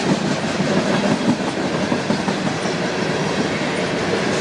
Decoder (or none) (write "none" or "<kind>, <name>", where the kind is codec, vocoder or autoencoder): none